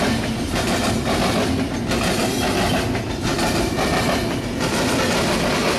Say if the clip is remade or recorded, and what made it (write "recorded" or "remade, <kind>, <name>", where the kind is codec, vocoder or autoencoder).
recorded